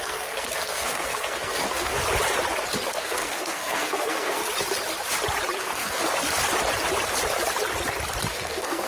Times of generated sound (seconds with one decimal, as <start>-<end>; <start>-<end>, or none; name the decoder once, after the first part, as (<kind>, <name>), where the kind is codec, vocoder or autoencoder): 0.0-2.0 (codec, SNAC); 2.9-4.4; 5.6-6.0; 8.3-8.9